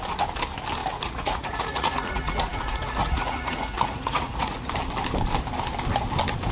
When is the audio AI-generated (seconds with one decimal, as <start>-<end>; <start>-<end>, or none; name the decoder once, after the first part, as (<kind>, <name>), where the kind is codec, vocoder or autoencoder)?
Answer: 0.8-4.7 (vocoder, Vocos)